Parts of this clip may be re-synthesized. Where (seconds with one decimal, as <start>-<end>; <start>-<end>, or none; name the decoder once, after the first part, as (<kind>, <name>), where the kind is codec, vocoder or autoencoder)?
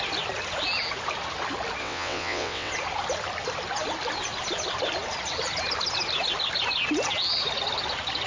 1.8-2.7 (vocoder, WaveNeXt)